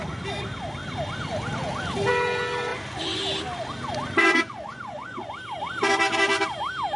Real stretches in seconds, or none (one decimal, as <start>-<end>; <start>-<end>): 0.0-2.7; 3.2-4.2; 5.3-7.0